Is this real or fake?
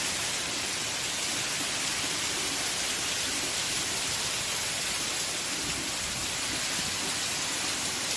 real